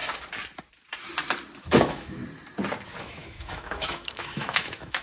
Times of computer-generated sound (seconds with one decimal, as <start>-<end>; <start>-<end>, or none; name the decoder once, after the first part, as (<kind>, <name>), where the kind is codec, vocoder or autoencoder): 1.6-2.2 (autoencoder, DAC-VAE); 3.0-5.0